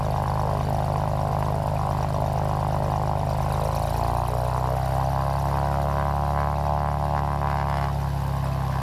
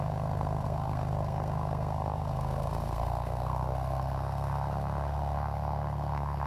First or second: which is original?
first